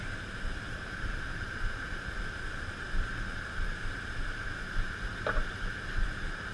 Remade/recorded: recorded